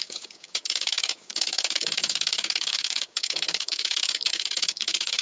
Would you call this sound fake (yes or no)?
yes